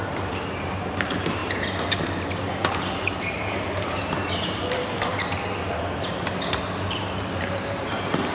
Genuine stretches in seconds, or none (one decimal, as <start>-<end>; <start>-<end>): none